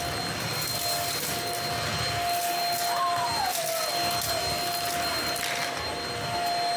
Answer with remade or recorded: recorded